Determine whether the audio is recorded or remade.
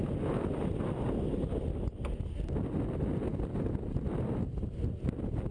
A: recorded